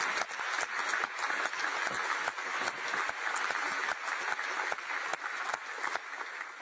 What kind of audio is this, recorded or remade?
recorded